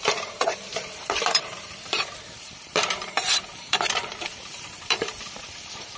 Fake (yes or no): yes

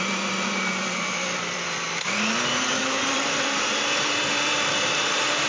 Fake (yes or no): yes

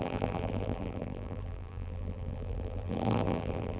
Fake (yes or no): yes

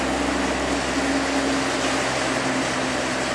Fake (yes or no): no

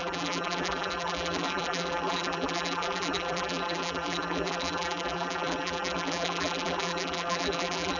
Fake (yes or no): yes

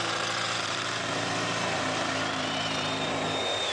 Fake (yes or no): yes